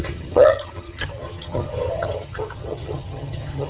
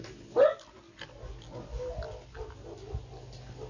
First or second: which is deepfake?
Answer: first